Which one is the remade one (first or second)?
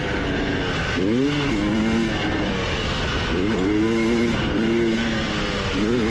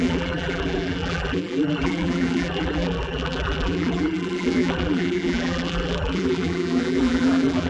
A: second